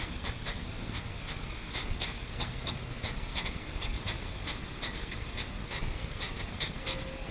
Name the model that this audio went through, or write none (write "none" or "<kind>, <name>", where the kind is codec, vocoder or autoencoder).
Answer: codec, SNAC